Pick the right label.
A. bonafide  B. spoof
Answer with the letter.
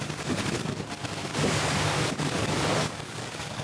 B